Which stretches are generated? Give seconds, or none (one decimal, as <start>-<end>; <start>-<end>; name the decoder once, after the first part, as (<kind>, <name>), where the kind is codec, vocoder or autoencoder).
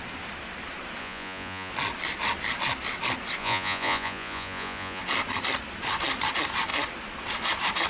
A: 1.0-1.7 (vocoder, Vocos); 3.4-5.0